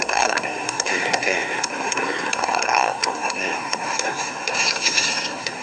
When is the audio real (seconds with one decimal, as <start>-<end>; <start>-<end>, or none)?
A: none